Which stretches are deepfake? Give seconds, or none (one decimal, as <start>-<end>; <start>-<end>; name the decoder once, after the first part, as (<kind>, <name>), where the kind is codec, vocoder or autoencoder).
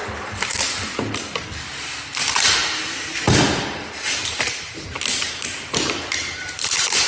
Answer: 0.5-2.6 (vocoder, BigVGAN v2); 4.6-7.1